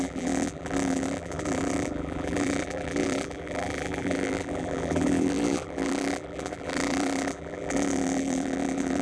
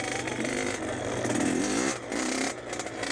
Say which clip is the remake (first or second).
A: first